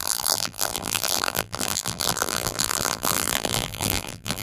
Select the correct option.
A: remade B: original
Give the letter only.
A